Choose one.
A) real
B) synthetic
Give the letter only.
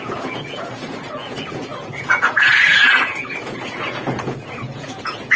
B